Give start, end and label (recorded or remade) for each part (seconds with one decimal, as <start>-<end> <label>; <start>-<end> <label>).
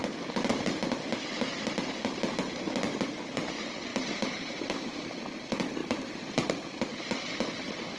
0.0-3.9 recorded; 3.9-5.2 remade; 5.2-5.8 recorded; 5.8-6.5 remade; 6.5-8.0 recorded